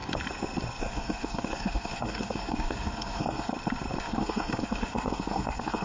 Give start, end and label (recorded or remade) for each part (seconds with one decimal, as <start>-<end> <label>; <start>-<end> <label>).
0.0-0.8 recorded; 0.8-3.5 remade; 3.5-4.0 recorded; 4.0-5.8 remade